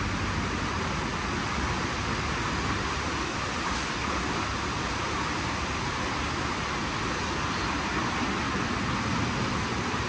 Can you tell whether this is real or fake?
real